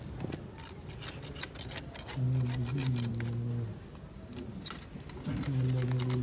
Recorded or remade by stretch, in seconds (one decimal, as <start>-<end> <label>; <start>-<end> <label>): 0.0-6.2 recorded